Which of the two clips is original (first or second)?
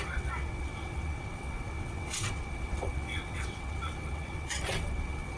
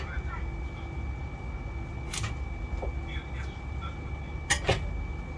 second